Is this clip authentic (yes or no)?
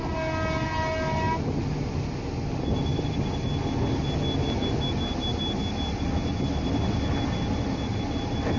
yes